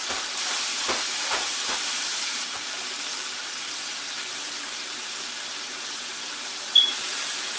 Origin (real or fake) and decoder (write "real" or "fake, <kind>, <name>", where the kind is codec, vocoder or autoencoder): fake, vocoder, BigVGAN v2